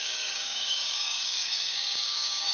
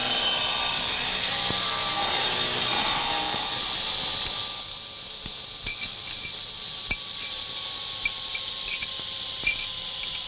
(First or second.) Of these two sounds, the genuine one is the second